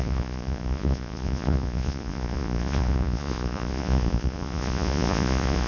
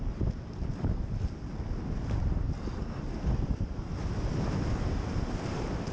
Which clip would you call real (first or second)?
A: second